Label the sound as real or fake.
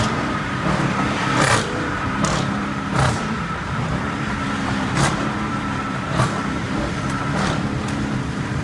fake